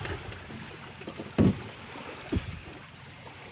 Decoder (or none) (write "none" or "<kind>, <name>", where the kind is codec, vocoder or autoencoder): none